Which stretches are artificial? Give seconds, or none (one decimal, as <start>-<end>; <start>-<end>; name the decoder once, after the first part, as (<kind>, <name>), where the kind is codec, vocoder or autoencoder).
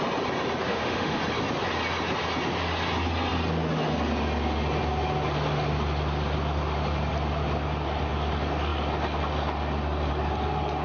0.7-1.2 (autoencoder, DAC-VAE)